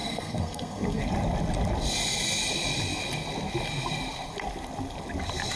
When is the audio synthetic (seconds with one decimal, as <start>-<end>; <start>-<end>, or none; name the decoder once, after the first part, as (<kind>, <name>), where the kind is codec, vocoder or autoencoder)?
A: 0.0-1.0 (codec, SNAC)